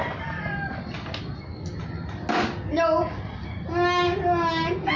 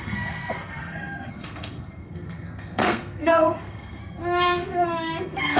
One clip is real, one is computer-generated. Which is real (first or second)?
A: first